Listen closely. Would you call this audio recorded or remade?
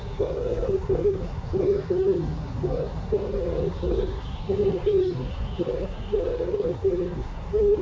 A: remade